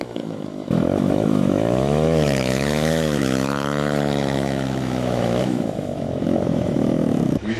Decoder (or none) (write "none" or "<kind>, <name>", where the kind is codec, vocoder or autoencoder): autoencoder, DAC-VAE